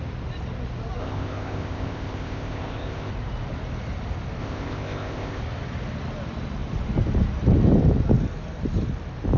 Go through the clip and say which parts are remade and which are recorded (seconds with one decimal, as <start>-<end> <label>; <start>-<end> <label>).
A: 0.0-1.0 recorded; 1.0-3.1 remade; 3.1-4.4 recorded; 4.4-5.4 remade; 5.4-9.4 recorded